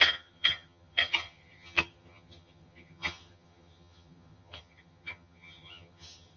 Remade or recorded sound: remade